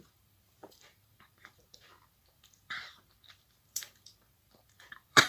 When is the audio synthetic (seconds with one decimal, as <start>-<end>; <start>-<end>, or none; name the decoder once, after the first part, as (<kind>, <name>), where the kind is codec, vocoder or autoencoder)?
0.0-5.3 (vocoder, BigVGAN v2)